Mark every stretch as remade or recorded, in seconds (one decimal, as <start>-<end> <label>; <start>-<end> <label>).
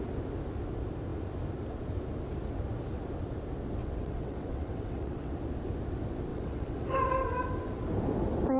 0.0-3.8 recorded; 3.8-5.3 remade; 5.3-6.3 recorded; 6.3-6.9 remade; 6.9-8.6 recorded